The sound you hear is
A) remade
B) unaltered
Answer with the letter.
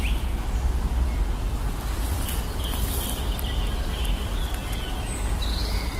B